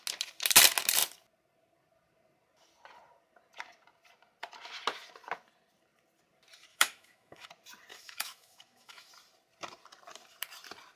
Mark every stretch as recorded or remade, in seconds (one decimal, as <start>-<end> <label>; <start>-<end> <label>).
0.0-6.7 recorded; 6.7-7.5 remade; 7.5-7.9 recorded; 7.9-9.1 remade; 9.1-11.0 recorded